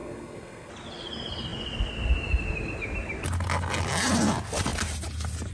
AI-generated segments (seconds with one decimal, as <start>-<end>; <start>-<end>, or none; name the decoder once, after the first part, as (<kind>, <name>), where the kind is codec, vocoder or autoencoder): 0.0-0.7 (codec, SNAC)